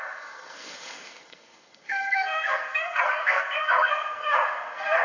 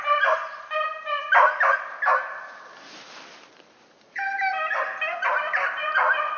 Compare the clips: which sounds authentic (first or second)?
second